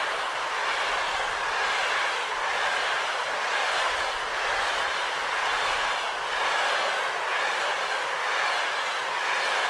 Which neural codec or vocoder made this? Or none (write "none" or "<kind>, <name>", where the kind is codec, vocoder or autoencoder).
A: none